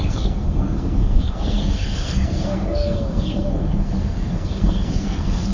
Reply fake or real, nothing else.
fake